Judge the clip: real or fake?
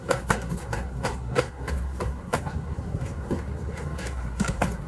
fake